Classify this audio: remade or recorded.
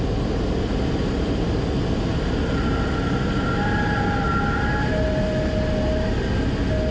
recorded